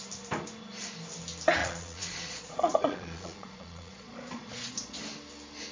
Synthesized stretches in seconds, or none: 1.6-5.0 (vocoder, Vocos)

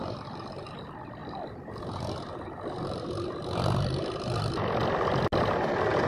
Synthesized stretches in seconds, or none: none

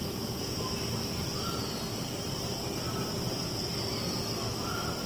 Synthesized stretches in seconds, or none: 0.0-0.6 (vocoder, Vocos)

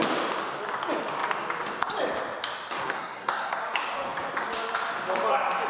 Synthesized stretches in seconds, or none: 2.8-3.6 (codec, SNAC)

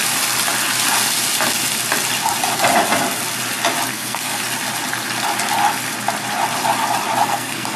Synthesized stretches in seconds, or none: 3.9-4.4 (codec, SNAC); 7.2-7.8

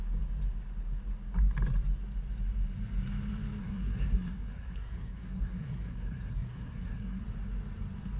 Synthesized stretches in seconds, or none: 3.6-7.2 (codec, SNAC)

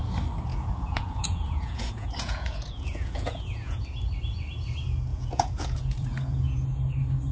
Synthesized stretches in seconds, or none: 0.5-3.8 (vocoder, Vocos); 5.1-6.8